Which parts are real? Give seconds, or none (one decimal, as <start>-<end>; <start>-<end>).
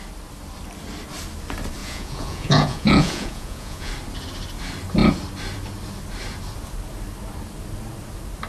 0.0-1.8; 3.9-8.5